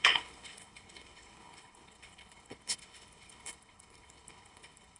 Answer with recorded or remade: remade